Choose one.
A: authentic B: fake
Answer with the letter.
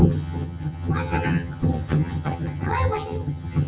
B